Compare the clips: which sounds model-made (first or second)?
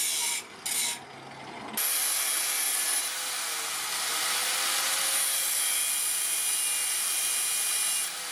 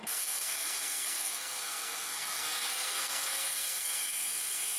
second